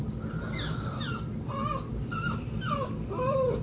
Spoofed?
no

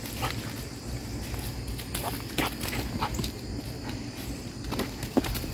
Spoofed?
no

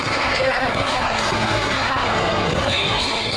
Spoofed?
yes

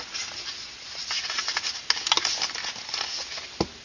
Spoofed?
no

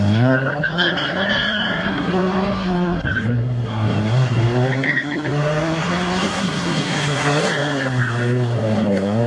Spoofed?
yes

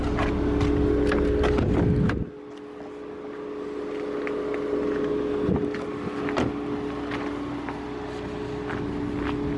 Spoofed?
no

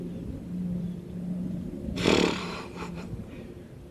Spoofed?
yes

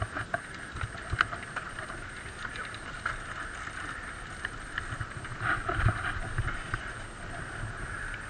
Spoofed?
no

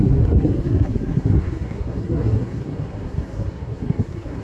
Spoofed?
yes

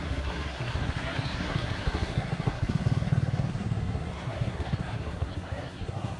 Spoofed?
yes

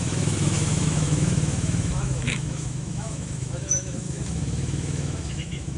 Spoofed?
yes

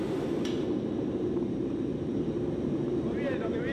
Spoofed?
yes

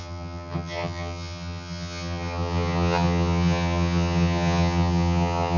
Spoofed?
yes